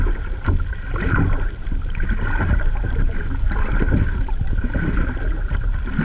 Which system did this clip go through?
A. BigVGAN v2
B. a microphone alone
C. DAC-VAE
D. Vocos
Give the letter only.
B